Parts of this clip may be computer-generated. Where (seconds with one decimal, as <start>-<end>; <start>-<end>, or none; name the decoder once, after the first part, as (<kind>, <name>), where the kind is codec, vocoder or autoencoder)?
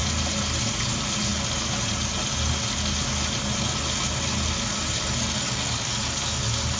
none